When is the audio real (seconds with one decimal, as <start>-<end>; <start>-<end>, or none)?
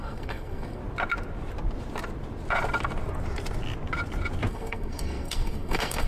0.8-4.5